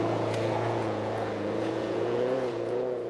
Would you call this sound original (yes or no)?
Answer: no